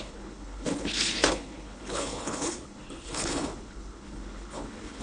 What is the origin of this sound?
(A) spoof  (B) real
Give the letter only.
A